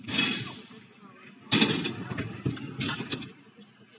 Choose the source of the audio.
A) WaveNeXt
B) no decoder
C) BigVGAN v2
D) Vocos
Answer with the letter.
B